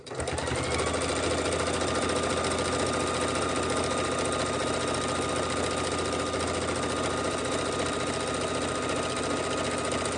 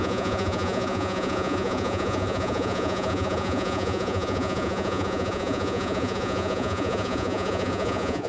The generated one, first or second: second